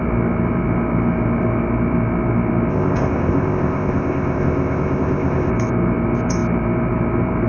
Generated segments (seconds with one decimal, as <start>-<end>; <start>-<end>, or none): 2.7-5.5